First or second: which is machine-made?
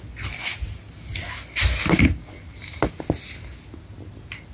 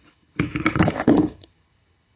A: second